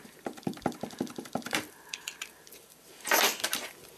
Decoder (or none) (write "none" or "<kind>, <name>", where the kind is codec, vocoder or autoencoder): vocoder, BigVGAN v2